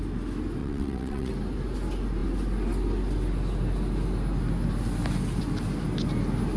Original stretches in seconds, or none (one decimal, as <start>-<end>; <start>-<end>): 0.0-0.6; 1.3-6.6